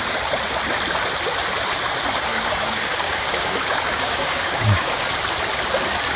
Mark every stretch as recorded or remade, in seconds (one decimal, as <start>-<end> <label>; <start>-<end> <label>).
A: 0.0-2.3 recorded; 2.3-5.2 remade; 5.2-6.2 recorded